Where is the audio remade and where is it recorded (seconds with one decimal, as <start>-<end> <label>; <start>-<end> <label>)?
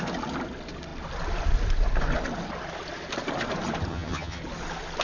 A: 0.0-3.9 recorded; 3.9-4.4 remade; 4.4-5.0 recorded